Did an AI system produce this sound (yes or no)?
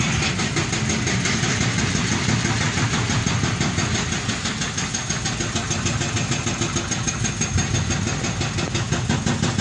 no